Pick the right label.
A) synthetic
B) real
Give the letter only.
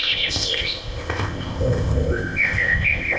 A